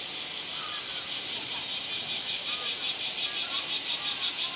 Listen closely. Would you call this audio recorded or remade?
recorded